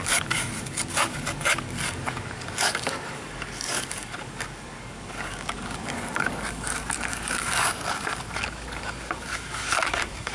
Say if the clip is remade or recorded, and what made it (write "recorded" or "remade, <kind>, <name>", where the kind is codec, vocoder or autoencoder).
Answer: remade, codec, DAC